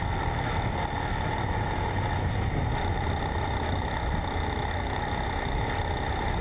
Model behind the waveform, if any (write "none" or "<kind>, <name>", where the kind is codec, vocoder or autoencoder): none